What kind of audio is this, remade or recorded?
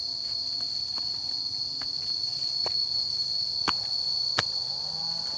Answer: recorded